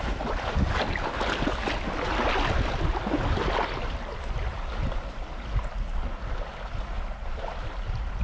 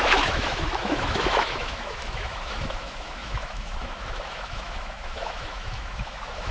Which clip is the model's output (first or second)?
second